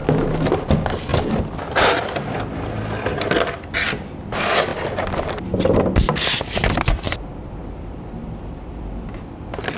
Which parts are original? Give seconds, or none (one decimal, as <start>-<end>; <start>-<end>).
0.0-1.1; 2.2-7.6; 9.3-9.8